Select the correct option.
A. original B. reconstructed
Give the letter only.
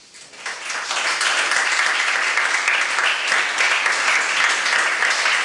A